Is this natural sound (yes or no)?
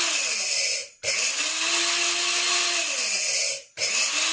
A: yes